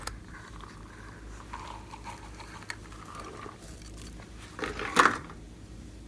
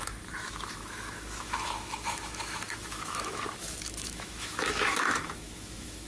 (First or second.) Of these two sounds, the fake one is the second